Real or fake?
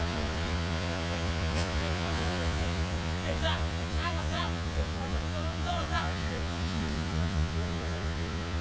fake